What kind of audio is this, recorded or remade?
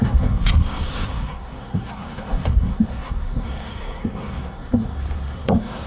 remade